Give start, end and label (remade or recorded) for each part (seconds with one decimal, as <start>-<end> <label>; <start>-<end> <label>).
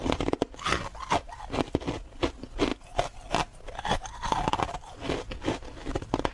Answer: 0.0-6.3 recorded